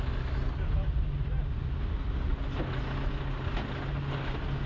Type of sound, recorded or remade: recorded